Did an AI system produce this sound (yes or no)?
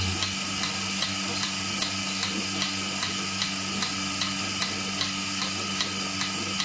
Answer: no